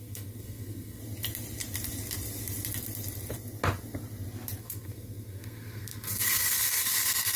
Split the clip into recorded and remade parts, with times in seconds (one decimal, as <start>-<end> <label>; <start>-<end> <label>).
0.0-1.0 remade; 1.0-4.6 recorded; 4.6-7.4 remade